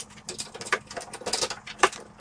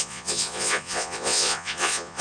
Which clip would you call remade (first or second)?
second